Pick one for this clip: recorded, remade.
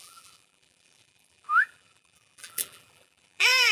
remade